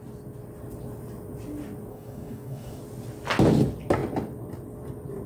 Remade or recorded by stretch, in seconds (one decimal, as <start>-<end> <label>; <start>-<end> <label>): 0.0-1.9 recorded; 1.9-2.8 remade; 2.8-5.3 recorded